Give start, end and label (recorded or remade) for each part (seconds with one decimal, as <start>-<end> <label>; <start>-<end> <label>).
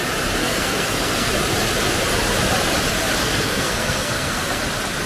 0.0-0.4 recorded; 0.4-1.3 remade; 1.3-3.2 recorded; 3.2-4.6 remade; 4.6-5.1 recorded